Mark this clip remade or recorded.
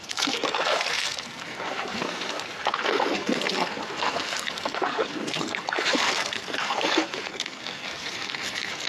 remade